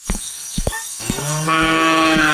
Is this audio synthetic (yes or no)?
yes